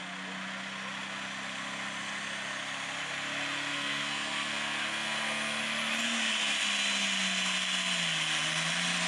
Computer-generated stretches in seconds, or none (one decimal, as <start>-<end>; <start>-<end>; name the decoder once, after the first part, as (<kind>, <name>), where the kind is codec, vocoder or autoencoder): 3.7-5.6 (codec, SNAC)